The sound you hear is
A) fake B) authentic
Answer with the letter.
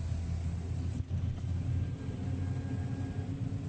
B